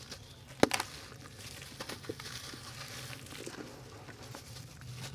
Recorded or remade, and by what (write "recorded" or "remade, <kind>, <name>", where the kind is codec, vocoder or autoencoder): recorded